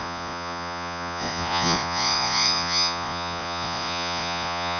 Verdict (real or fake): fake